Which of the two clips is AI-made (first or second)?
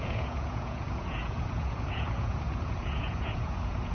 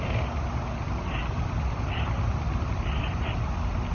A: first